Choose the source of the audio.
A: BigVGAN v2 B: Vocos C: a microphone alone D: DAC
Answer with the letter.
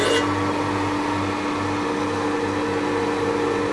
C